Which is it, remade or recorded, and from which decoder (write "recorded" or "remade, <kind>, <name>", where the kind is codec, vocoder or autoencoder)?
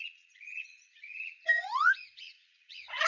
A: remade, vocoder, Vocos